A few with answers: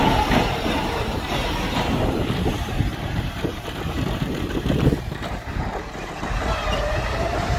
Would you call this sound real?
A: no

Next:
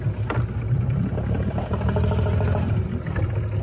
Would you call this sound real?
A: yes